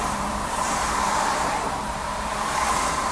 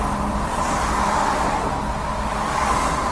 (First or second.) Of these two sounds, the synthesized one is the first